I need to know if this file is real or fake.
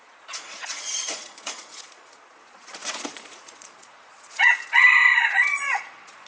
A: fake